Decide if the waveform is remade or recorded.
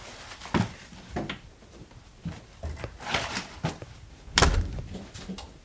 recorded